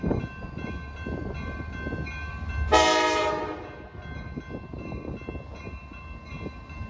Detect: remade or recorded recorded